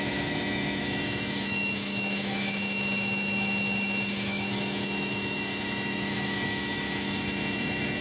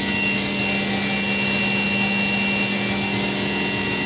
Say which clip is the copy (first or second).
first